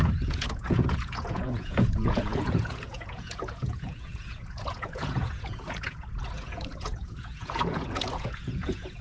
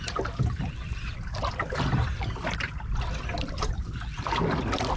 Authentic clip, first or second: second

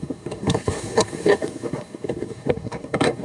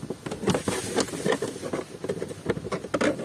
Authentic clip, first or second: second